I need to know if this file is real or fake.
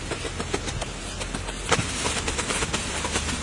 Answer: real